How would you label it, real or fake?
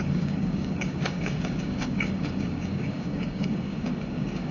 fake